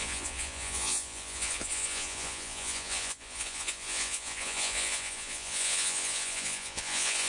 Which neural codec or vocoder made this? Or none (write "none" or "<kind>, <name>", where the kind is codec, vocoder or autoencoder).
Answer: vocoder, Vocos